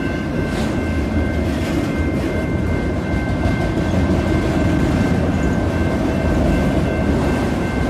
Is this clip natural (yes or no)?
yes